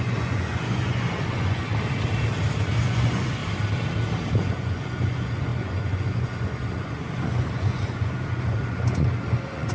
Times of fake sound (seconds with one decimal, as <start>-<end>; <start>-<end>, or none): 0.0-1.7; 2.8-3.4; 4.4-9.7